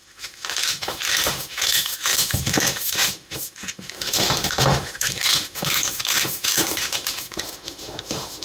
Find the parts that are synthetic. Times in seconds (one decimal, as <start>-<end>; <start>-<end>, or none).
0.0-8.4

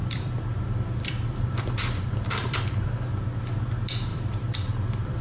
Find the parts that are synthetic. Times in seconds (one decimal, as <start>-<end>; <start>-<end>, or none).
0.0-3.1; 4.1-5.2

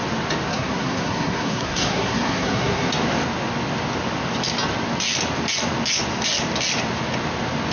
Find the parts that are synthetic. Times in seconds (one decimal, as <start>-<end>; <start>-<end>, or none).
0.5-2.9

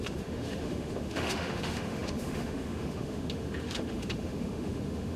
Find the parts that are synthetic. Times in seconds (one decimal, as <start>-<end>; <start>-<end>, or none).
0.0-5.2

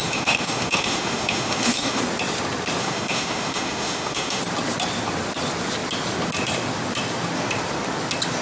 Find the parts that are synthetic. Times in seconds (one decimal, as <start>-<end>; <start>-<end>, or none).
0.0-2.0; 2.8-4.4

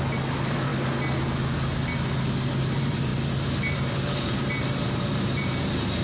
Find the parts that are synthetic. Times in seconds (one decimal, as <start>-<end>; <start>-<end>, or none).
0.0-0.7; 2.6-6.0

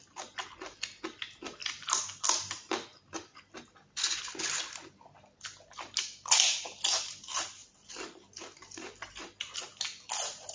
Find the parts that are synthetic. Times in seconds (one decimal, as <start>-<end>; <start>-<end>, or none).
1.6-4.2; 7.6-9.1

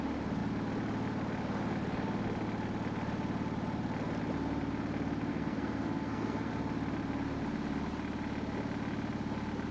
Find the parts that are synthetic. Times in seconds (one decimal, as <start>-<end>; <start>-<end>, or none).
5.3-6.5